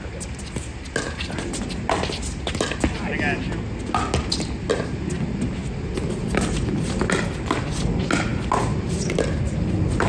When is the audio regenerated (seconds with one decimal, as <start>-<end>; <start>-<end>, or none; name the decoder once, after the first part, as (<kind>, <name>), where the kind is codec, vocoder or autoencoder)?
none